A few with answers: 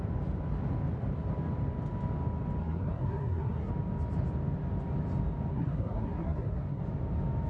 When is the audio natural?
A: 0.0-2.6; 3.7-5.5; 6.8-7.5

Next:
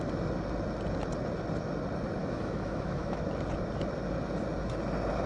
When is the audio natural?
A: 0.0-2.2; 3.2-5.3

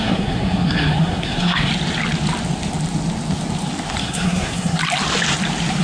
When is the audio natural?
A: 1.7-4.0; 4.8-5.8